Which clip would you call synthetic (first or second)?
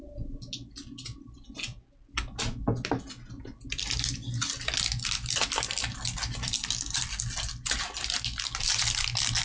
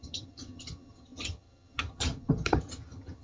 second